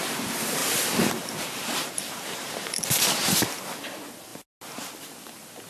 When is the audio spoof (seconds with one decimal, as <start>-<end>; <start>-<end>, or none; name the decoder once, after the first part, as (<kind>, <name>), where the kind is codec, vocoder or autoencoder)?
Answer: 0.6-2.9 (vocoder, BigVGAN v2)